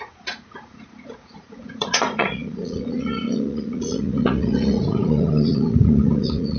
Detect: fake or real fake